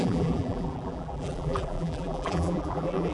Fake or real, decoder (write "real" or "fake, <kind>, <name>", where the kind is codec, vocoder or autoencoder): fake, vocoder, BigVGAN v2